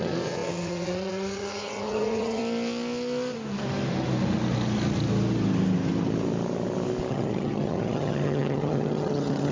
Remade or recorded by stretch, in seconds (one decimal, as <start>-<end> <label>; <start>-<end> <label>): 0.0-2.4 remade; 2.4-7.1 recorded; 7.1-9.5 remade